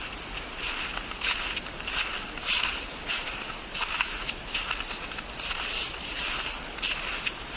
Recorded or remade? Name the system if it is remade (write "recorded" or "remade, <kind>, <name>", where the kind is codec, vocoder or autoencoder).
recorded